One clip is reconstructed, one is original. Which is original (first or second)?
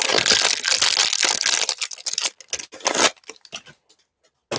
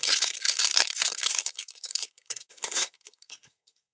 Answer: first